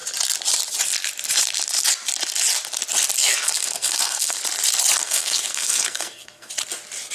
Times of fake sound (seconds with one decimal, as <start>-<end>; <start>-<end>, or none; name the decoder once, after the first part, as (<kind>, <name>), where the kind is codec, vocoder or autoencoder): 3.2-4.4 (codec, SNAC); 5.0-6.5